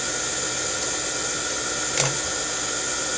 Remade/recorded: recorded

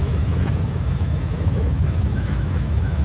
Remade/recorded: remade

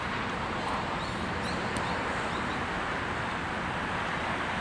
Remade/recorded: recorded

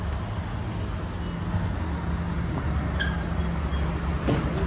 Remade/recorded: recorded